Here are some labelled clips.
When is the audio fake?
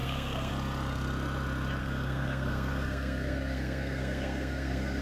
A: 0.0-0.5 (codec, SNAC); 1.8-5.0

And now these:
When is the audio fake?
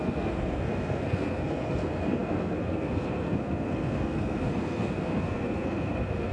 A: 0.0-6.3 (codec, SNAC)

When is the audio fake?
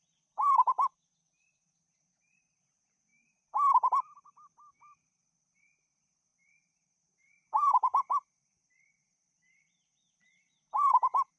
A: 0.0-3.1 (vocoder, BigVGAN v2); 3.9-11.4